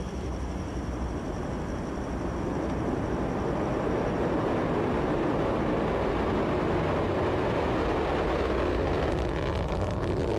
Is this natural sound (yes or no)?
yes